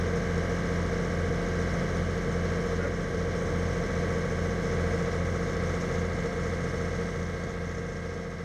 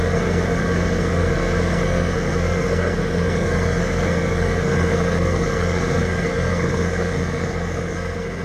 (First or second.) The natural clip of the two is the first